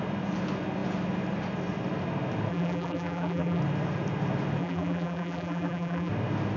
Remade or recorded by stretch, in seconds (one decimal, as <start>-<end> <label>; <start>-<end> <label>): 0.0-2.5 recorded; 2.5-3.6 remade; 3.6-4.6 recorded; 4.6-6.1 remade; 6.1-6.6 recorded